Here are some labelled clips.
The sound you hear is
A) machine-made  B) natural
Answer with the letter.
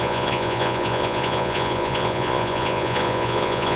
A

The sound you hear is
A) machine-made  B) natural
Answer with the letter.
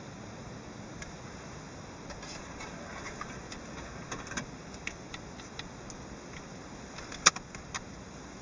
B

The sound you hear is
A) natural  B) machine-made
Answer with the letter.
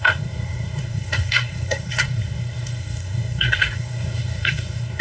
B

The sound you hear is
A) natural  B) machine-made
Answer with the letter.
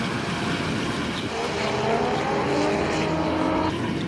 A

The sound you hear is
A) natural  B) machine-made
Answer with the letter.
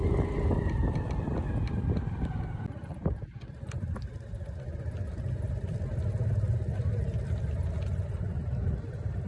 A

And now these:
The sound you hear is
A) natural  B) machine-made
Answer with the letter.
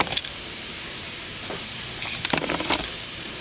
B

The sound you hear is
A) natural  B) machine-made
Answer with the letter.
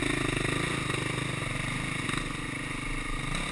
A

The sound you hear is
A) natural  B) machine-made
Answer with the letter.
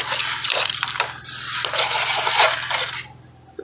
A